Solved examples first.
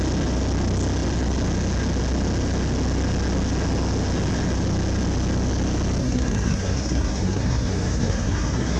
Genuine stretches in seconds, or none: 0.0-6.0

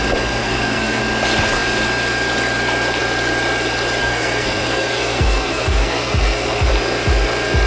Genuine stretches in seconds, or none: 0.0-0.4; 1.0-4.0; 6.7-7.7

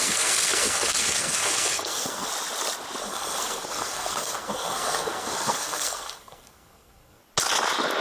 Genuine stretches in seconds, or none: 2.3-3.0; 7.2-8.0

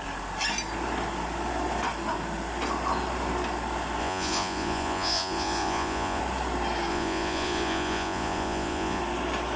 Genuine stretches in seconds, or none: 0.0-4.0; 6.2-6.9; 9.0-9.6

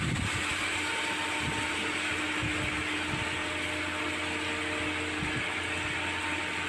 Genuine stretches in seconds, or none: 0.0-6.7

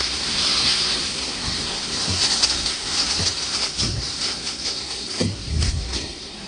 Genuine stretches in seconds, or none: none